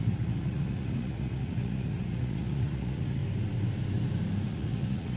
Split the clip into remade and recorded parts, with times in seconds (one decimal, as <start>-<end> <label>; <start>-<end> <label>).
0.0-3.2 remade; 3.2-4.5 recorded; 4.5-5.2 remade